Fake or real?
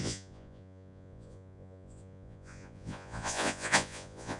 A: fake